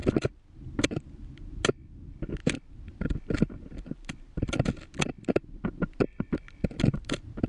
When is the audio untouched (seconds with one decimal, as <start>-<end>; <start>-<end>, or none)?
0.0-7.5